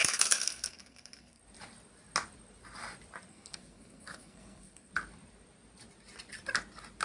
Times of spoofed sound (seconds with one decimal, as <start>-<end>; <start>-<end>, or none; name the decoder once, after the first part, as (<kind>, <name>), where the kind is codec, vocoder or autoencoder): 0.0-1.4 (codec, SNAC); 3.3-4.9